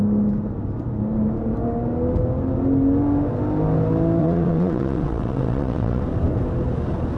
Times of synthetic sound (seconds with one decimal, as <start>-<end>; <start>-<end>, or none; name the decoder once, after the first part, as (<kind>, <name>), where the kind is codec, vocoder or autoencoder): 4.2-6.0 (vocoder, WaveNeXt)